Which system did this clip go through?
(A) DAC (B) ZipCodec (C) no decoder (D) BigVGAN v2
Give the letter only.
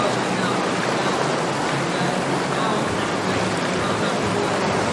C